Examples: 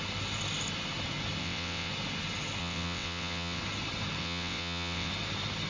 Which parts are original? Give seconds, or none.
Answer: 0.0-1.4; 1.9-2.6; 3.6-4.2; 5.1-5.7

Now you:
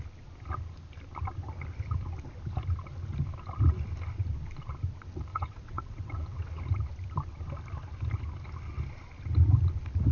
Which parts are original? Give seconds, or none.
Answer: 0.0-5.3; 6.6-10.1

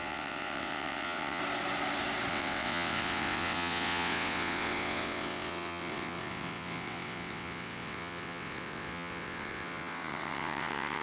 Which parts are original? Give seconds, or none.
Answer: 1.4-2.3

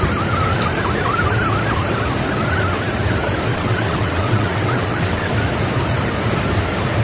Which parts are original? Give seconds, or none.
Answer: 0.0-3.5; 5.3-7.0

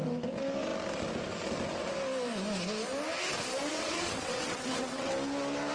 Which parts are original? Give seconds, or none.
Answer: 0.0-3.7; 5.1-5.7

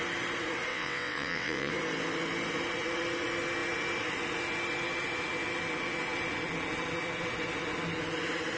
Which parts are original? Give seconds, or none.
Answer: 0.0-0.7; 1.7-8.6

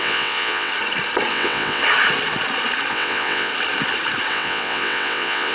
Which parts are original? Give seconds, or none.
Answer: 0.7-1.3; 1.8-2.9; 3.5-4.3

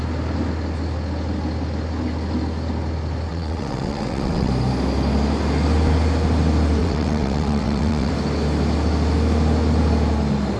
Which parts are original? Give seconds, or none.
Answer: 0.0-3.3; 4.5-6.8; 8.1-10.6